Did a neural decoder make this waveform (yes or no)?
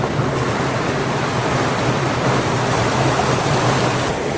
no